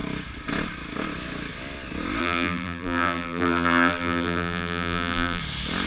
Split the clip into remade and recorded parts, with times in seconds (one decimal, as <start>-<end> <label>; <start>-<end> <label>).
0.0-2.2 recorded; 2.2-5.4 remade; 5.4-5.9 recorded